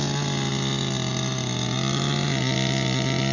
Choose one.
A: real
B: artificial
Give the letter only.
A